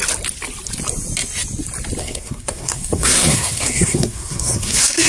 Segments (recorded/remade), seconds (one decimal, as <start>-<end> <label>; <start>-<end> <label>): 0.0-2.0 recorded; 2.0-5.1 remade